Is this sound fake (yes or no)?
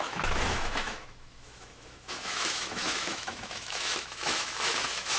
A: yes